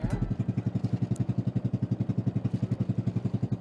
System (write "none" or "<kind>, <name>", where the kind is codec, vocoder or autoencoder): none